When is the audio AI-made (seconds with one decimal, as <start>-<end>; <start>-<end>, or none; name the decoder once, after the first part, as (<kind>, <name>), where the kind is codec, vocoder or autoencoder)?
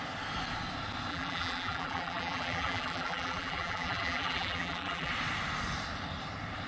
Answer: 1.1-5.1 (vocoder, BigVGAN v2)